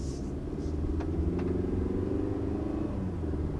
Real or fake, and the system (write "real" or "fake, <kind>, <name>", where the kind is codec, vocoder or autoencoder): real